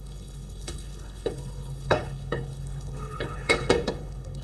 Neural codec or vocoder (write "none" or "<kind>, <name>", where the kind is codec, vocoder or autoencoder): codec, HILCodec